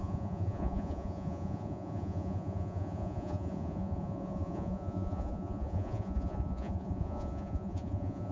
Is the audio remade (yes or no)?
yes